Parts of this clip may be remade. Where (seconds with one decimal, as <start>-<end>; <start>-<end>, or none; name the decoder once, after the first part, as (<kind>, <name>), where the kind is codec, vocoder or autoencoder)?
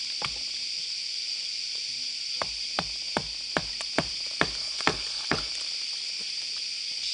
4.6-5.5 (codec, HILCodec)